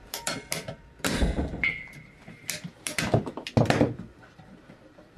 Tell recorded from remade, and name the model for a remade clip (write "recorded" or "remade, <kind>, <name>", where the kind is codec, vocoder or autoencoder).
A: remade, vocoder, BigVGAN v2